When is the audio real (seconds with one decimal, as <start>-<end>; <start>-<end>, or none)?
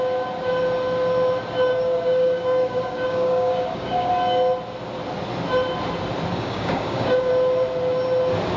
0.0-1.7; 4.1-6.3; 7.3-8.6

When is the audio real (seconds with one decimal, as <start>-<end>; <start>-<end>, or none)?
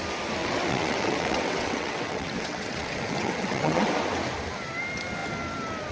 0.0-0.4; 3.9-5.9